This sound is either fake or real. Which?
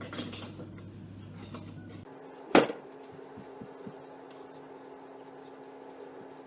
real